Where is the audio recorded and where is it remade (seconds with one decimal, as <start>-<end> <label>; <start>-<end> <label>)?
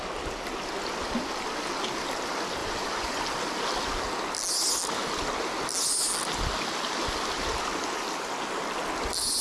0.0-2.6 recorded; 2.6-3.2 remade; 3.2-9.4 recorded